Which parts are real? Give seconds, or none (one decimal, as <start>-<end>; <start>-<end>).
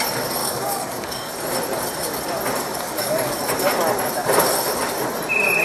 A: 0.0-0.4; 1.3-2.7; 3.4-5.6